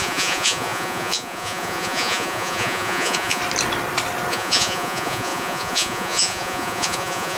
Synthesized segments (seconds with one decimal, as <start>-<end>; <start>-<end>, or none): 0.0-3.4; 4.3-7.4